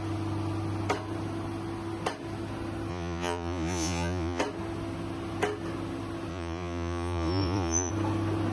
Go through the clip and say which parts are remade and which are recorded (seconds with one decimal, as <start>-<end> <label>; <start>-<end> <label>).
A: 0.0-2.9 recorded; 2.9-4.4 remade; 4.4-6.3 recorded; 6.3-7.9 remade; 7.9-8.5 recorded